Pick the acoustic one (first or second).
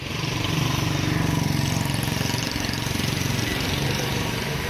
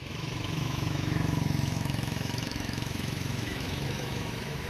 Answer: first